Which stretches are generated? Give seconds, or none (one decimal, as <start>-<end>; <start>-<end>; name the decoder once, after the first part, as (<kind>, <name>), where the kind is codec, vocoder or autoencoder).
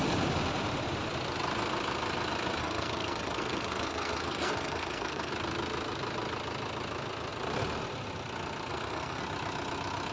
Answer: 2.6-5.3 (codec, SNAC); 8.7-9.2